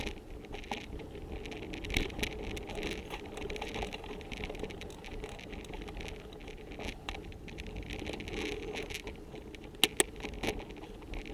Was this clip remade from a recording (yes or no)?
no